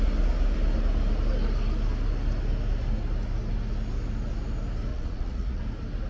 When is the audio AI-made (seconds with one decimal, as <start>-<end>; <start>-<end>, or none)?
4.9-5.6